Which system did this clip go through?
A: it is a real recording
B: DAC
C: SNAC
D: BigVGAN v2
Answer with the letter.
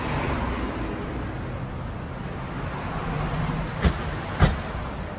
A